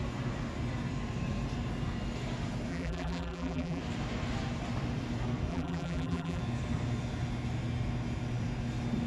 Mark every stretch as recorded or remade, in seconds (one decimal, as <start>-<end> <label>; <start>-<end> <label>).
0.0-2.7 recorded; 2.7-3.8 remade; 3.8-5.5 recorded; 5.5-6.4 remade; 6.4-9.1 recorded